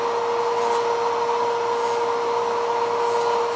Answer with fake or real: real